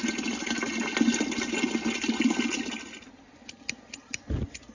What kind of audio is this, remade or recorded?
recorded